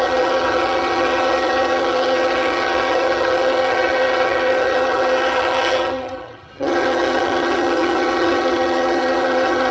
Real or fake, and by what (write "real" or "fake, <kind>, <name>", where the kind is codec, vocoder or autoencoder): fake, vocoder, HiFi-GAN